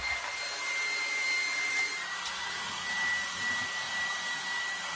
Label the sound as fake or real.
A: real